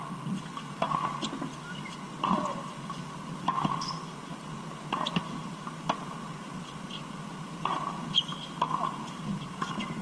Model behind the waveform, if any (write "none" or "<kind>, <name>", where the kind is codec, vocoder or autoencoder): none